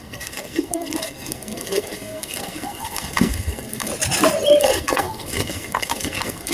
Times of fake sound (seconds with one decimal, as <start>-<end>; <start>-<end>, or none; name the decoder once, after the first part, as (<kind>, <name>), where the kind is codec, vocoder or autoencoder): 0.0-3.9 (codec, SNAC); 4.6-6.5